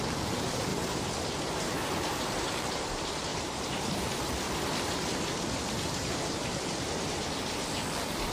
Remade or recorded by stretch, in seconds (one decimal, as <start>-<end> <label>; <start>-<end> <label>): 0.0-8.3 remade